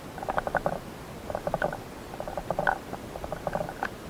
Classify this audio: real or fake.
real